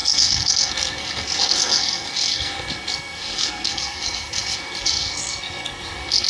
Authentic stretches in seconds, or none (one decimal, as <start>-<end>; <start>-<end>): none